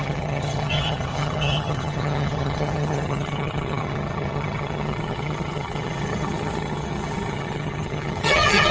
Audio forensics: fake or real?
fake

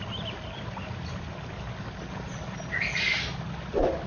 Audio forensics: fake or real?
real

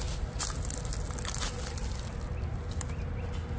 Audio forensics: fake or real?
real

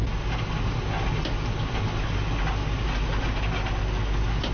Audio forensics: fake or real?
real